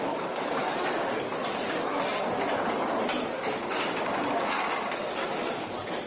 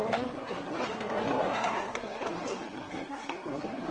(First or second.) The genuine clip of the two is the first